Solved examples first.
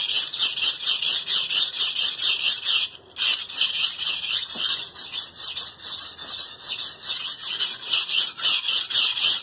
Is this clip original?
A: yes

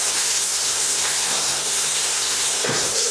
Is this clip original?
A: no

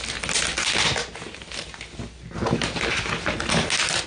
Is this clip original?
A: yes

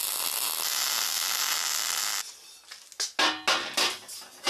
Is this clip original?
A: yes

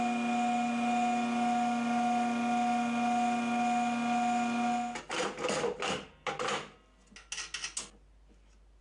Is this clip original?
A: yes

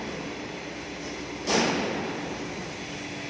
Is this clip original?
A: yes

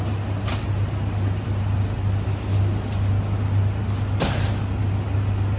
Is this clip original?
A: yes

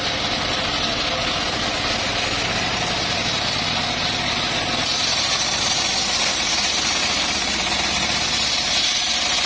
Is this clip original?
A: yes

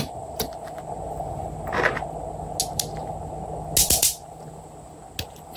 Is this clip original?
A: yes